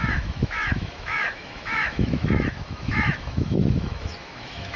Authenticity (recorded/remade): remade